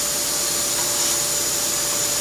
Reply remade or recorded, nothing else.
recorded